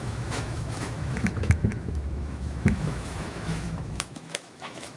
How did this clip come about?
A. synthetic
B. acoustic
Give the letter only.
A